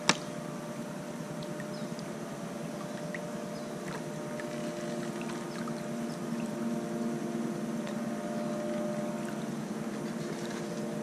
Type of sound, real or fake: real